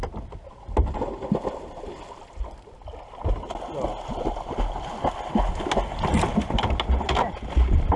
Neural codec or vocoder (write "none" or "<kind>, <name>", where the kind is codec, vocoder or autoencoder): none